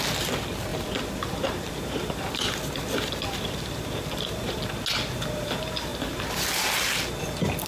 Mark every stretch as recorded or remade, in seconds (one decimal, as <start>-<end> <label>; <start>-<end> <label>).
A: 0.0-0.7 recorded; 0.7-4.6 remade; 4.6-5.9 recorded; 5.9-7.1 remade; 7.1-7.7 recorded